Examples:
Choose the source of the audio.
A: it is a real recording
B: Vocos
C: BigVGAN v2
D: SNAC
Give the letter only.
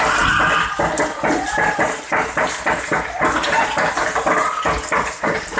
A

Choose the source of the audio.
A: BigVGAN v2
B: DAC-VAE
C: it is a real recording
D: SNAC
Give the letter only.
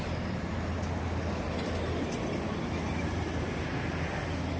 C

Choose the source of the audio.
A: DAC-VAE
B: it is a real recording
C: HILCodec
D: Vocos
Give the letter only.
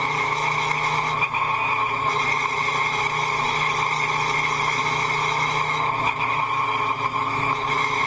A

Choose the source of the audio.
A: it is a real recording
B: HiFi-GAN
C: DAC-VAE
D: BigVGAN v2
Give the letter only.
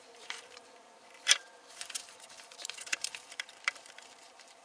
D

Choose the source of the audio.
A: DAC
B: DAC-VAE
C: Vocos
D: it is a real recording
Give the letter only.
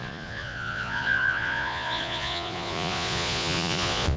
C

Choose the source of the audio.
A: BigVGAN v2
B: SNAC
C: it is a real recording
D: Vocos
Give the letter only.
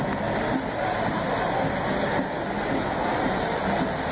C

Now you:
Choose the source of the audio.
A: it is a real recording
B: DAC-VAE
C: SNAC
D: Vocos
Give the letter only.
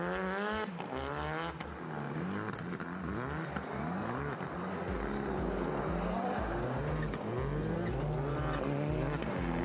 A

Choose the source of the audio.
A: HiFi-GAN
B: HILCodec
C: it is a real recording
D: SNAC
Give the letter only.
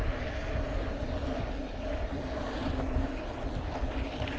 C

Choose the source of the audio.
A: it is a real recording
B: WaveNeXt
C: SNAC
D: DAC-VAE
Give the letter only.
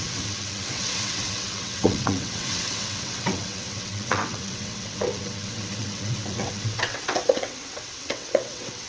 B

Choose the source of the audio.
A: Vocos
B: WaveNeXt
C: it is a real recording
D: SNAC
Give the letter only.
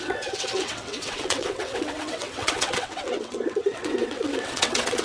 B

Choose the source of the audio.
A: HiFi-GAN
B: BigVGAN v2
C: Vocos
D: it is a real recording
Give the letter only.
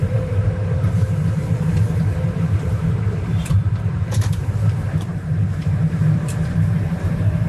B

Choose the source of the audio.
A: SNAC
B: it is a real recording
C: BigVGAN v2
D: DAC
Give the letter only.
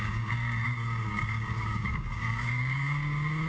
D